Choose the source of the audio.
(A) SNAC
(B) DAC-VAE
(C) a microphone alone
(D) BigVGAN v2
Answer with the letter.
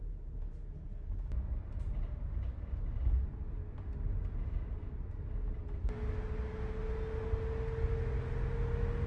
C